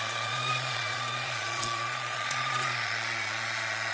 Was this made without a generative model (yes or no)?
no